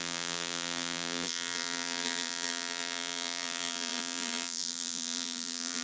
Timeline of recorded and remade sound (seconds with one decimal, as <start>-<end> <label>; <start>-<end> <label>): 0.0-5.8 remade